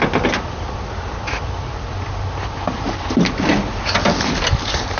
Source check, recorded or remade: recorded